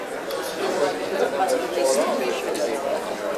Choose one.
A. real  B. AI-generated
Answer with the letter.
A